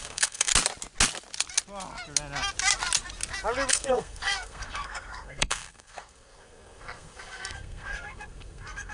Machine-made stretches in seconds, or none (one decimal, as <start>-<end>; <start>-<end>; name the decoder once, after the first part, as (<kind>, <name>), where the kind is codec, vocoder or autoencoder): 0.0-0.5 (codec, SNAC); 3.7-8.9